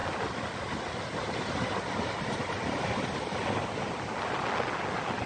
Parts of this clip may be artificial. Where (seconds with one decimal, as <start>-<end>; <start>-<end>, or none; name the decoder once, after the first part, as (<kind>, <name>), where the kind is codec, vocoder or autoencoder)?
none